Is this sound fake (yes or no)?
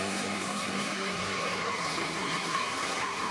yes